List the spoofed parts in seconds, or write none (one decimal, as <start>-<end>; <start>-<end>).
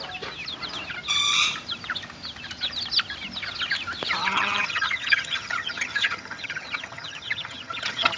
4.2-8.2